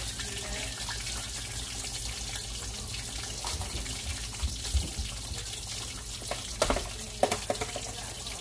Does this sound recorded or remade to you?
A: recorded